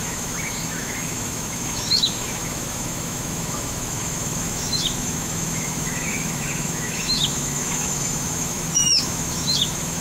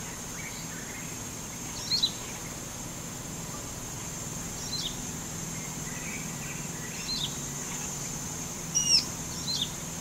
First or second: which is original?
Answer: second